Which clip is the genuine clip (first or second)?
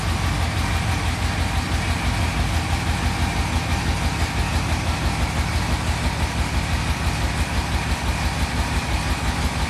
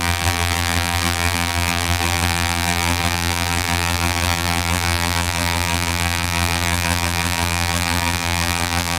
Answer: first